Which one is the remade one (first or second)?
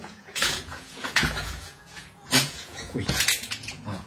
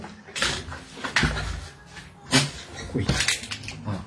first